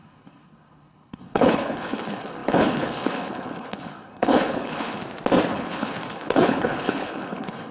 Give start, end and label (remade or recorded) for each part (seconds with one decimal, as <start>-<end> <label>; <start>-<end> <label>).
0.0-5.0 remade; 5.0-5.5 recorded; 5.5-7.7 remade